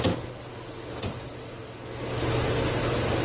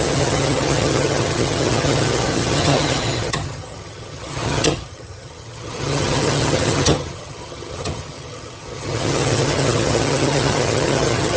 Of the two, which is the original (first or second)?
first